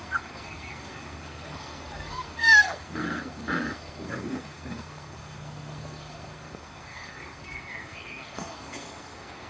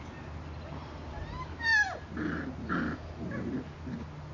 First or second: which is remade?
first